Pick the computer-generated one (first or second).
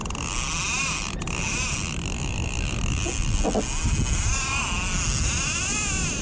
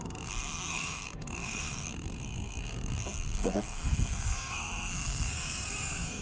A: second